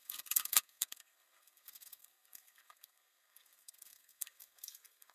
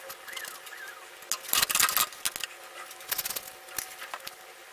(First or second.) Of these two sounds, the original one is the second